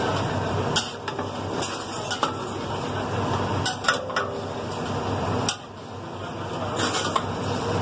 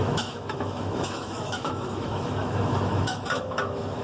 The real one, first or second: first